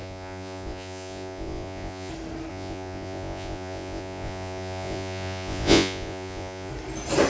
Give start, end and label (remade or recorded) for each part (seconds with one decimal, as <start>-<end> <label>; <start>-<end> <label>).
0.0-2.1 remade; 2.1-2.5 recorded; 2.5-6.7 remade; 6.7-7.3 recorded

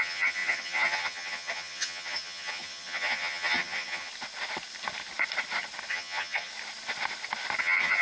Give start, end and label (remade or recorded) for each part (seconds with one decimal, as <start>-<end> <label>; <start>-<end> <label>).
0.0-4.1 remade; 4.1-5.9 recorded; 5.9-6.5 remade; 6.5-7.6 recorded; 7.6-8.0 remade